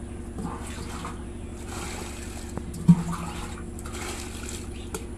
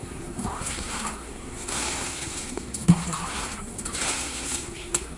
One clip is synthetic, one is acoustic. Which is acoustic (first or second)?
first